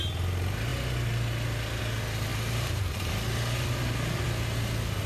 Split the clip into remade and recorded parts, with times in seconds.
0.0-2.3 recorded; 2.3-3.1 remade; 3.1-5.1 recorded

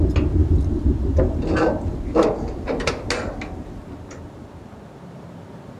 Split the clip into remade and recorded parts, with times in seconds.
0.0-0.4 recorded; 0.4-2.9 remade; 2.9-5.8 recorded

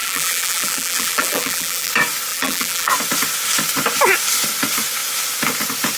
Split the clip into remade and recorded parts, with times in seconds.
0.0-1.9 remade; 1.9-2.3 recorded; 2.3-2.9 remade; 2.9-6.0 recorded

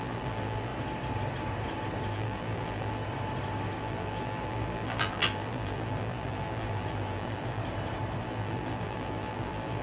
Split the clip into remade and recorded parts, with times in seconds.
0.0-0.7 remade; 0.7-2.1 recorded; 2.1-3.0 remade; 3.0-3.8 recorded; 3.8-7.6 remade; 7.6-8.2 recorded; 8.2-9.8 remade

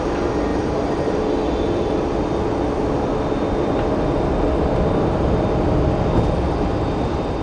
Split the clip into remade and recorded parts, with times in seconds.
0.0-0.5 recorded; 0.5-1.1 remade; 1.1-7.4 recorded

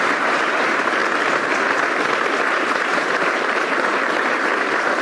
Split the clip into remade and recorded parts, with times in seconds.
0.0-1.0 remade; 1.0-2.5 recorded; 2.5-5.0 remade

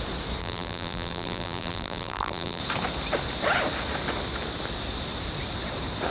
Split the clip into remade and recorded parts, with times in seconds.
0.0-0.4 recorded; 0.4-2.6 remade; 2.6-6.1 recorded

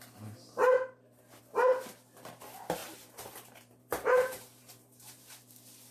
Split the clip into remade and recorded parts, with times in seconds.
0.0-0.6 recorded; 0.6-1.4 remade; 1.4-2.8 recorded; 2.8-5.4 remade; 5.4-5.9 recorded